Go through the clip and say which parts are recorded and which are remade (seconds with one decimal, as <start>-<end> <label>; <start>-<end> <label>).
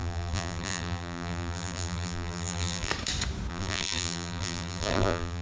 0.0-2.9 remade; 2.9-3.5 recorded; 3.5-5.4 remade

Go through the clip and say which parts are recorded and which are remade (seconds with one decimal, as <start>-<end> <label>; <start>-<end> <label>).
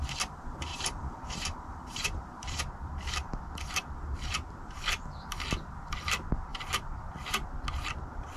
0.0-0.7 recorded; 0.7-2.6 remade; 2.6-8.4 recorded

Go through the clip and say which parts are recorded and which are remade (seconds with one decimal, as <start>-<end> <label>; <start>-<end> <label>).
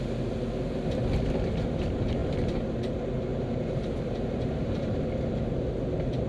0.0-2.2 recorded; 2.2-2.7 remade; 2.7-3.3 recorded; 3.3-5.0 remade; 5.0-6.3 recorded